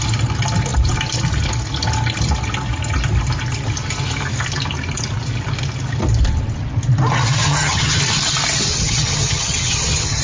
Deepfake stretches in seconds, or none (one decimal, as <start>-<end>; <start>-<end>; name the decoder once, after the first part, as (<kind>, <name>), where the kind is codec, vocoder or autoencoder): 7.4-8.0 (vocoder, HiFi-GAN); 8.7-10.2